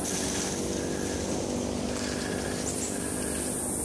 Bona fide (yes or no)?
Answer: yes